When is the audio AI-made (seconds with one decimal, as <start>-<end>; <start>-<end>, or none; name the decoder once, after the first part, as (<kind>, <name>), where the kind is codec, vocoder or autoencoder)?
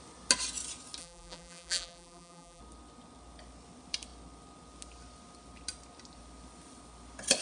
1.0-2.6 (vocoder, BigVGAN v2)